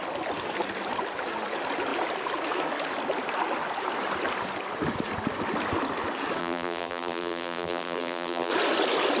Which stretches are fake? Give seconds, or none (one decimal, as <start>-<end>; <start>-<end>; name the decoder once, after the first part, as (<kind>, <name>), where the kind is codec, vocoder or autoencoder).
6.4-8.5 (vocoder, BigVGAN v2)